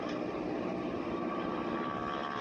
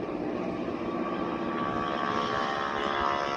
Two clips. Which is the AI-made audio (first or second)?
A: first